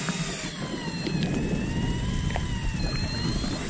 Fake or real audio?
fake